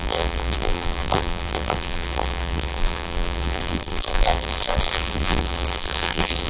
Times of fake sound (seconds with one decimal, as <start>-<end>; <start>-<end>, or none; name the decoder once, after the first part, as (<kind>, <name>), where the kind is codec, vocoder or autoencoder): 0.0-6.5 (vocoder, BigVGAN v2)